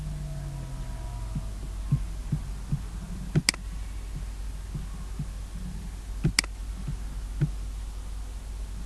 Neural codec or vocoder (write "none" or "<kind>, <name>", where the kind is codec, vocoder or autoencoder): none